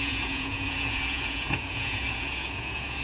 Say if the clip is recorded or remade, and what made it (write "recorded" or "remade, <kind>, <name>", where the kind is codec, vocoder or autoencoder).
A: remade, vocoder, Vocos